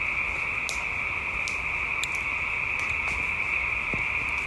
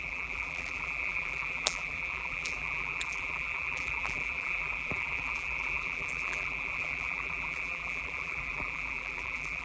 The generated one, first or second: second